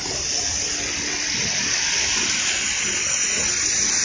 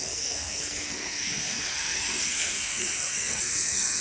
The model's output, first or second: second